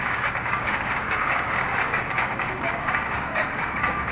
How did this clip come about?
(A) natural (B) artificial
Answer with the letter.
B